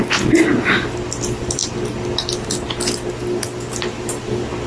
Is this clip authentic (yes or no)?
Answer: yes